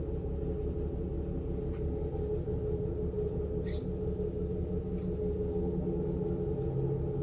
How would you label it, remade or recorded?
recorded